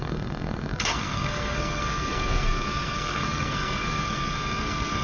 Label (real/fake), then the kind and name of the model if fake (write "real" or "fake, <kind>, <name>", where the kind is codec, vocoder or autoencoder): fake, codec, SNAC